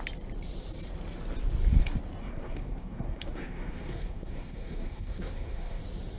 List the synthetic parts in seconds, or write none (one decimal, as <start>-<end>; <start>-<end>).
2.2-5.8